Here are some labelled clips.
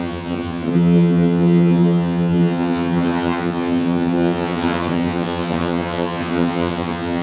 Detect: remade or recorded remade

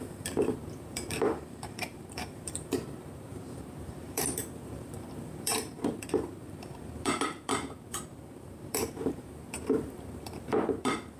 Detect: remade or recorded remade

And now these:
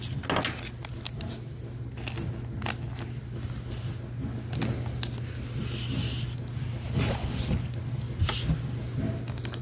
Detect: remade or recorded recorded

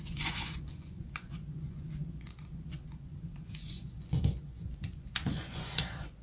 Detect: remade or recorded remade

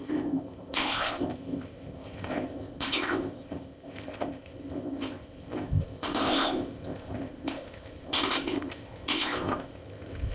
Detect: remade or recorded remade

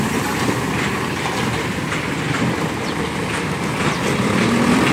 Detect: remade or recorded recorded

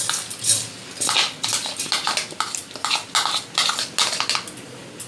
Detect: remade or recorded recorded